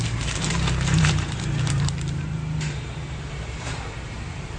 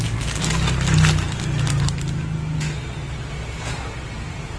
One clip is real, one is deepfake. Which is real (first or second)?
second